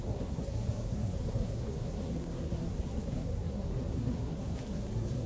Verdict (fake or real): fake